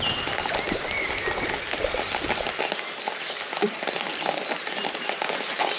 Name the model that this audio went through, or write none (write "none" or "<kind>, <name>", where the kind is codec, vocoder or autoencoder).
none